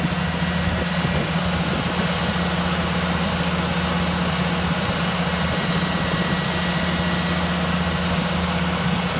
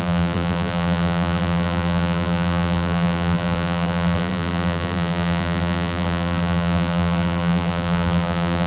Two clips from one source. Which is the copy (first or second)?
second